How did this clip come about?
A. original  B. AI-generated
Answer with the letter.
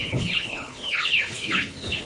B